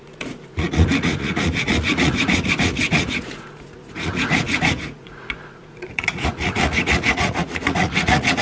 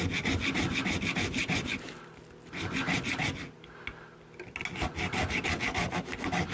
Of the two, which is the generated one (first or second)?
first